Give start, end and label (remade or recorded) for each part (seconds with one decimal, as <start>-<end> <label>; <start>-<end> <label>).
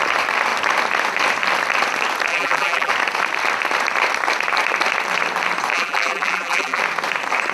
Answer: 0.0-2.3 recorded; 2.3-2.9 remade; 2.9-5.7 recorded; 5.7-6.8 remade; 6.8-7.5 recorded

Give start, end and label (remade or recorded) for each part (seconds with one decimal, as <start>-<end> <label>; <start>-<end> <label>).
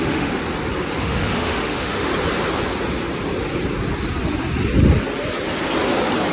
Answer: 0.0-0.4 remade; 0.4-1.0 recorded; 1.0-2.1 remade; 2.1-6.3 recorded